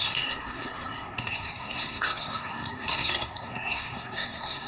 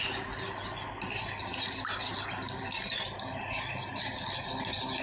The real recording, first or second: second